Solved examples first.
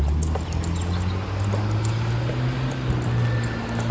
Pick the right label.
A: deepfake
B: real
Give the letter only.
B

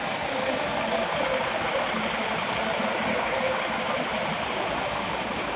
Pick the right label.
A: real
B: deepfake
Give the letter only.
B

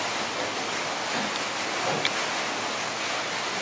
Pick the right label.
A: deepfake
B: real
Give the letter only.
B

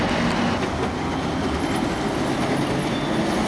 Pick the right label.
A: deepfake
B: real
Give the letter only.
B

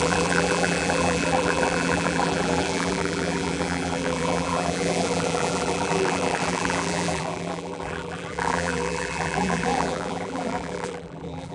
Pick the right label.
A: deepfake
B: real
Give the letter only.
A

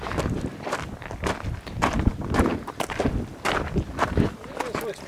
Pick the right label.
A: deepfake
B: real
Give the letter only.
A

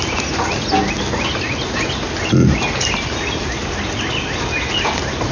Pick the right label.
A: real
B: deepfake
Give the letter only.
A